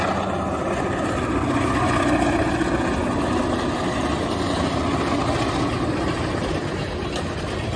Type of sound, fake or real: real